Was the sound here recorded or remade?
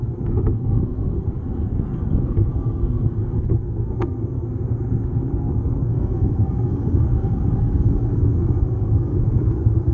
remade